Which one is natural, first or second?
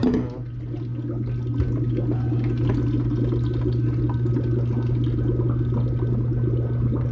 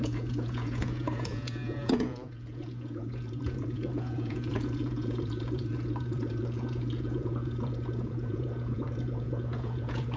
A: first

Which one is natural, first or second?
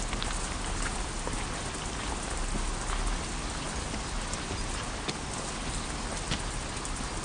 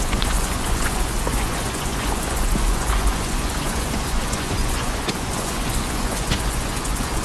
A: first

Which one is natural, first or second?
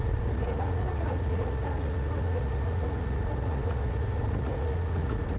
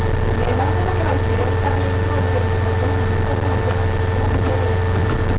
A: second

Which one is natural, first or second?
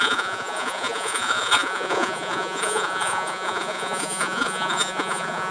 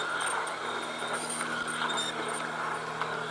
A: second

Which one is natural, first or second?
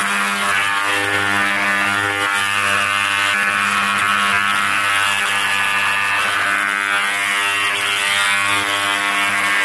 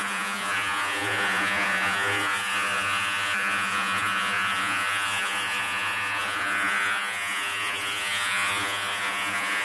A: first